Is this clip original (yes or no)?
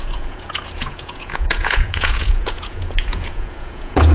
no